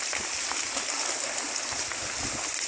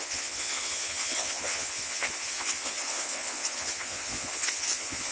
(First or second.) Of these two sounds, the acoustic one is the first